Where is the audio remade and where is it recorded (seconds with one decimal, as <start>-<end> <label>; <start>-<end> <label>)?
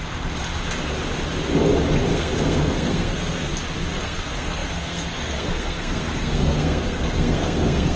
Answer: 0.0-2.1 recorded; 2.1-3.5 remade; 3.5-4.0 recorded; 4.0-8.0 remade